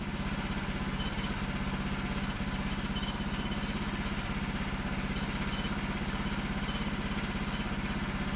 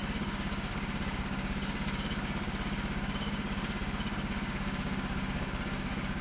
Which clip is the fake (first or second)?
second